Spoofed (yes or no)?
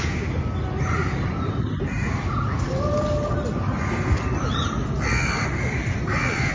no